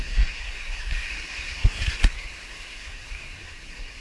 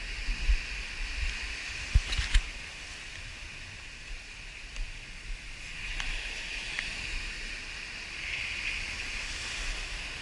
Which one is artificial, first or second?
first